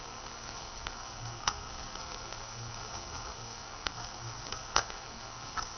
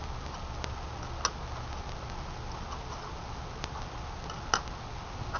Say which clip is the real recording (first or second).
second